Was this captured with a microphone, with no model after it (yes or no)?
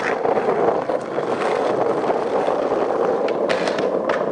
yes